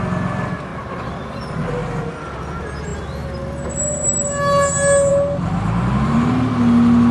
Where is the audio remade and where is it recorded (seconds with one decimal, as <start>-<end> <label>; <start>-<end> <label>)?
0.0-0.7 recorded; 0.7-1.7 remade; 1.7-7.1 recorded